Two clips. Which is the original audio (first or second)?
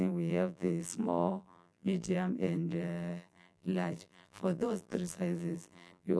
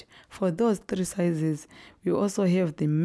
second